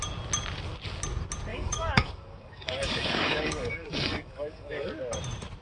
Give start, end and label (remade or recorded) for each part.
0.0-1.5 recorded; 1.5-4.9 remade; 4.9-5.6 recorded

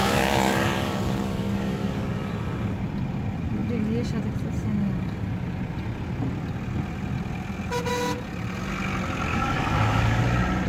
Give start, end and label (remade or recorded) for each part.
0.0-2.3 remade; 2.3-9.3 recorded; 9.3-10.2 remade; 10.2-10.7 recorded